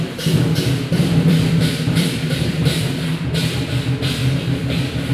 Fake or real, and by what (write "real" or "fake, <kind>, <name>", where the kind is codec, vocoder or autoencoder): fake, vocoder, BigVGAN v2